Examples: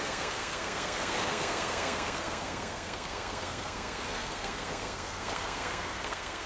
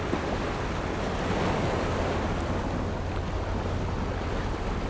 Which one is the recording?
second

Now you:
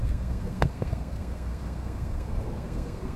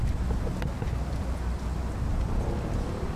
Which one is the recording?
second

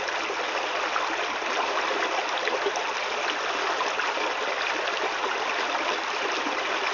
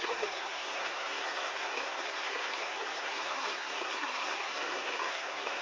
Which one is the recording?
first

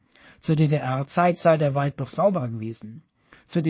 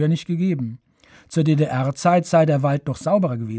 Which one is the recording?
second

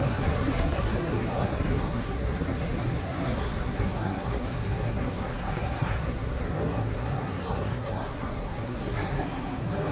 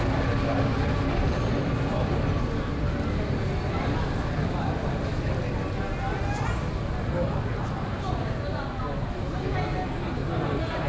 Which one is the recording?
second